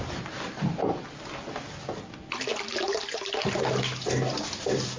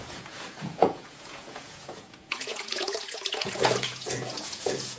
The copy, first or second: second